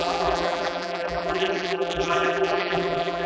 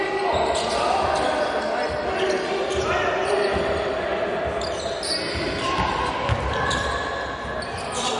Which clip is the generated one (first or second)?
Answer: first